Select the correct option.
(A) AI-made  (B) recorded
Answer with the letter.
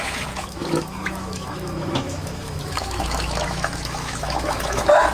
A